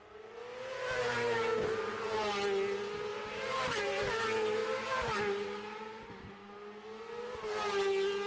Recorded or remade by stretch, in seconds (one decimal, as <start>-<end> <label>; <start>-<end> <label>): 0.0-3.1 recorded; 3.1-3.8 remade; 3.8-4.6 recorded; 4.6-5.2 remade; 5.2-8.3 recorded